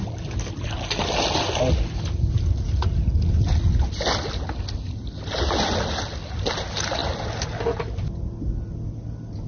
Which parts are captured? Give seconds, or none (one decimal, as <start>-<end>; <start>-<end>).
0.0-9.5